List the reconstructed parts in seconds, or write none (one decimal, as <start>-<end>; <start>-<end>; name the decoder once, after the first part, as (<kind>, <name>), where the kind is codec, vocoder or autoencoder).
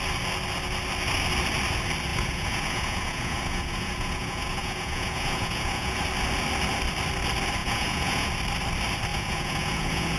2.1-6.0 (vocoder, Vocos); 7.6-8.3; 9.1-10.2